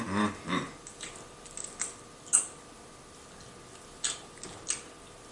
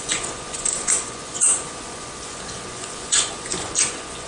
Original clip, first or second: first